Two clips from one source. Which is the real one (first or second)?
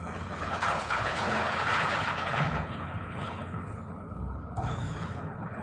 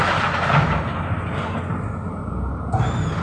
second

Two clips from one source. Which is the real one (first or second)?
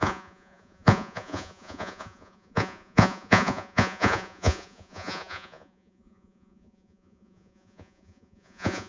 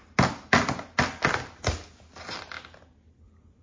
second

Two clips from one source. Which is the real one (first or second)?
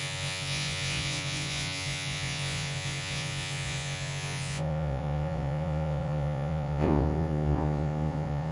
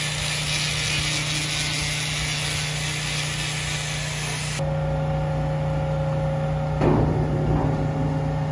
second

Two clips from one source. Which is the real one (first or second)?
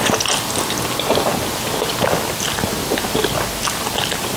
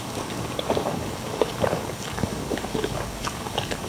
first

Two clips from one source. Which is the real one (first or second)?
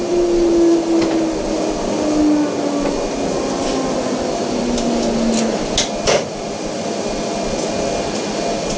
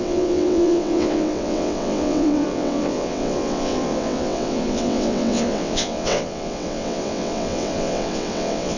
first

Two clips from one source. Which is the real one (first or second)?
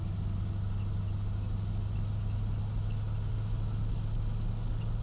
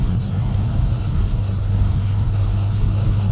first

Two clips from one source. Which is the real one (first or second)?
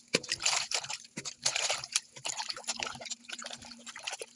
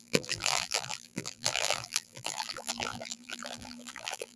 first